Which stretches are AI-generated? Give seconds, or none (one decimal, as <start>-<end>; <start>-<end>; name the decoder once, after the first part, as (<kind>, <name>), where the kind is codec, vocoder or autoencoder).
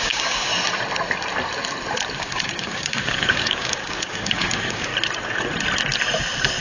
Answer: 0.0-0.5 (codec, DAC); 2.2-4.9